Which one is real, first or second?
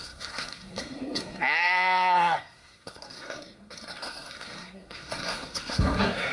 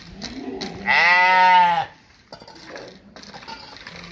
second